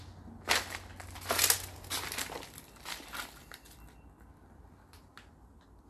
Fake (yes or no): no